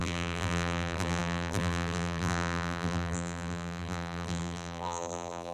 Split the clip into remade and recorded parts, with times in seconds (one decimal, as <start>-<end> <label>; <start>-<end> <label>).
0.0-5.5 remade